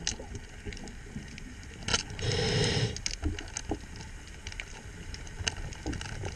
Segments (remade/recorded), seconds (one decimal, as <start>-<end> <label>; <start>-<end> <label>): 0.0-6.4 recorded